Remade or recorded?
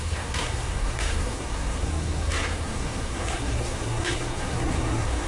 remade